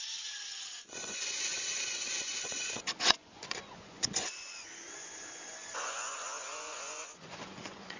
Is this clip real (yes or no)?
no